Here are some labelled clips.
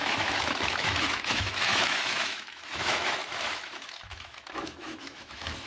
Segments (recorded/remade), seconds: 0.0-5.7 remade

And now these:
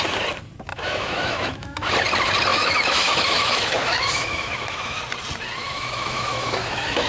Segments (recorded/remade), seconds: 0.0-0.7 recorded; 0.7-1.9 remade; 1.9-2.5 recorded; 2.5-5.0 remade; 5.0-5.6 recorded; 5.6-7.1 remade

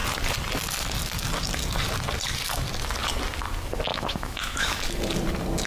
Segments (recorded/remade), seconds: 0.0-3.9 recorded; 3.9-4.8 remade; 4.8-5.7 recorded